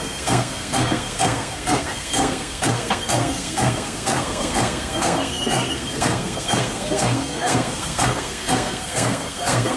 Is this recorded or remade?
remade